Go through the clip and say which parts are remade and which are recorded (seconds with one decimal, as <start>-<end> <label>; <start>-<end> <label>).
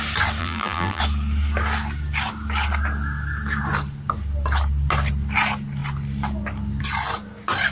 0.0-0.4 recorded; 0.4-1.0 remade; 1.0-7.7 recorded